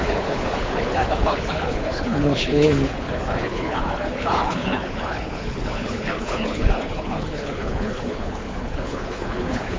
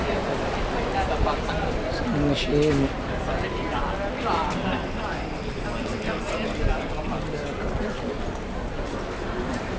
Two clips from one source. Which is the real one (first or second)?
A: second